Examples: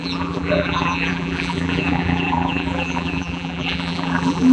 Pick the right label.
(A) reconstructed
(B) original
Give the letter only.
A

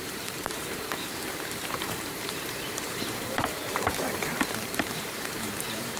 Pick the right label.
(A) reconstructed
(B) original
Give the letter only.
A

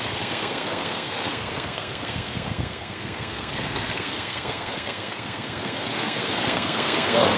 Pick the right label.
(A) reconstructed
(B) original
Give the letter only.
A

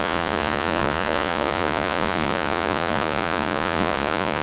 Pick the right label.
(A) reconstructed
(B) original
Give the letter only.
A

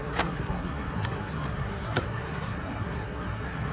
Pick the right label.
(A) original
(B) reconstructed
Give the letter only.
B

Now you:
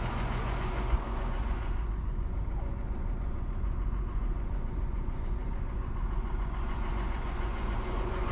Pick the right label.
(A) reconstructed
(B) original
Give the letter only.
A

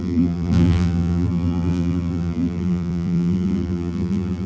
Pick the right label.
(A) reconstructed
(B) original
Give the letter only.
A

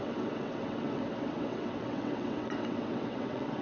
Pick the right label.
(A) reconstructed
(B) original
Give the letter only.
A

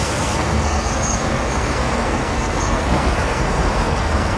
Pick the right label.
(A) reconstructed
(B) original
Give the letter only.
A